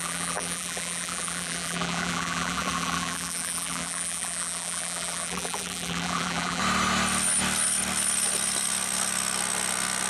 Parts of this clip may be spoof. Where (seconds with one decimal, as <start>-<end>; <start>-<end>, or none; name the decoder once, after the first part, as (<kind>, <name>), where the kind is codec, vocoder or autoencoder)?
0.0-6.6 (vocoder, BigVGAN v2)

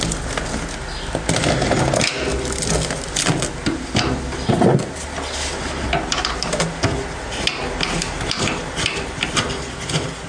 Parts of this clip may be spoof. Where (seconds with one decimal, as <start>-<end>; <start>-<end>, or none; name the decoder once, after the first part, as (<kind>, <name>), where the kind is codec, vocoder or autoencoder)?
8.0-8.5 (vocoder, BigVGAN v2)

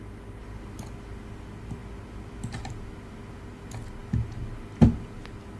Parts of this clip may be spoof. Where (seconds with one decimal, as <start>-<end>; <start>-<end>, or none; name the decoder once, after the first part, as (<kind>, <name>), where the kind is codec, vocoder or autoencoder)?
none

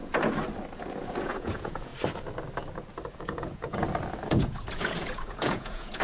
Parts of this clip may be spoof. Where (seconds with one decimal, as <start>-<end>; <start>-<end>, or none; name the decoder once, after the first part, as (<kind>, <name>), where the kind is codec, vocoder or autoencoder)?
1.2-1.9 (vocoder, Vocos); 3.1-3.8; 4.3-6.0